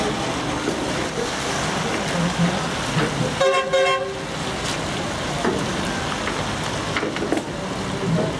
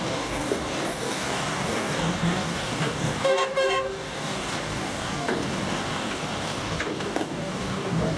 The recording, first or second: first